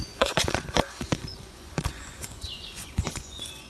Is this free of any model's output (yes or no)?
no